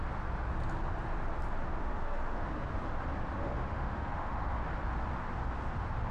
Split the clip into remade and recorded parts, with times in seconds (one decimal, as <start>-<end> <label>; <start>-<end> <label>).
0.0-1.8 recorded; 1.8-2.5 remade; 2.5-3.4 recorded; 3.4-4.5 remade; 4.5-6.1 recorded